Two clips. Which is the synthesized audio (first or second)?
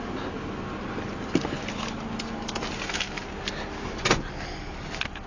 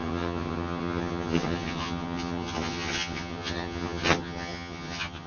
second